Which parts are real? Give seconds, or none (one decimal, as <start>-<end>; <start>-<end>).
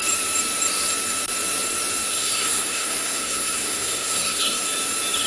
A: 0.0-2.1; 4.6-5.3